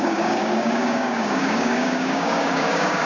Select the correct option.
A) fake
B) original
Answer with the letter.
A